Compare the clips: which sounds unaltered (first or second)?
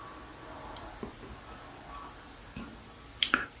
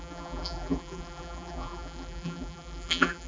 first